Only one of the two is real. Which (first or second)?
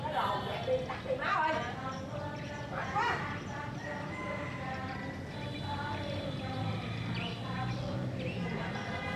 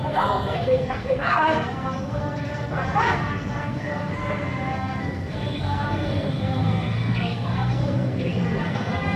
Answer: first